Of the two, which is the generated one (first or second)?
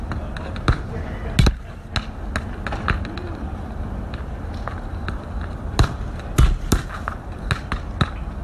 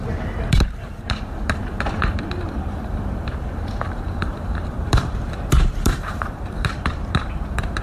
second